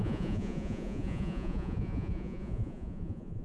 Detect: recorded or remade remade